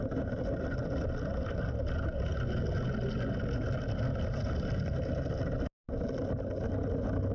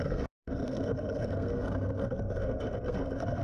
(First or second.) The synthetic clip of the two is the second